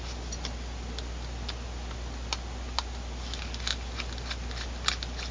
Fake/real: real